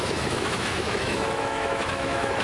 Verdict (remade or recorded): remade